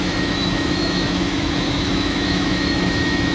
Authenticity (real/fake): fake